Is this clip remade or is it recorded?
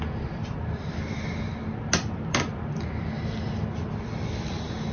recorded